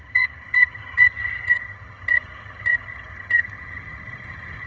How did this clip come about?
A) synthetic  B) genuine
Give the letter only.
A